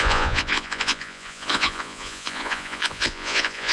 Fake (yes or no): yes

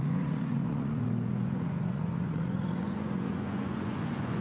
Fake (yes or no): yes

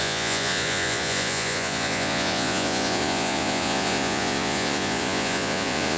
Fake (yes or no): yes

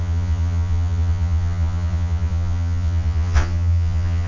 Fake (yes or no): yes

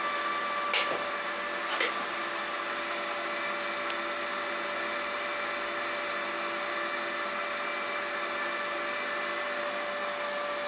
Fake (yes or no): no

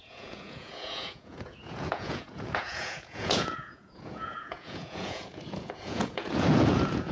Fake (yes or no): yes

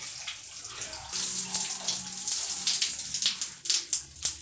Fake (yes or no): no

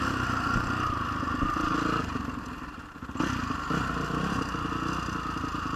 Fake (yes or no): no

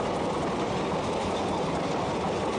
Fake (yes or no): no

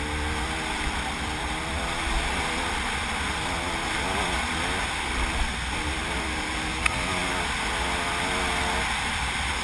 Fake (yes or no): no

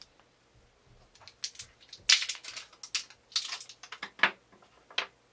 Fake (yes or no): no